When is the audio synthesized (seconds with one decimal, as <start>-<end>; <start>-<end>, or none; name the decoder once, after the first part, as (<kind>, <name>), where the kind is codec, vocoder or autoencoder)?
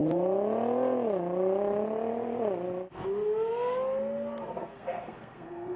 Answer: 4.6-5.8 (codec, SNAC)